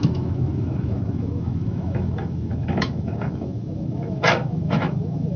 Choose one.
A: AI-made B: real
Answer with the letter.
A